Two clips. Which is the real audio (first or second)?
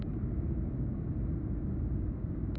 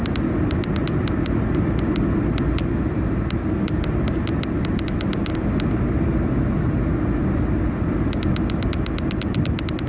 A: second